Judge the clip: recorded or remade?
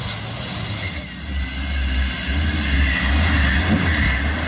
recorded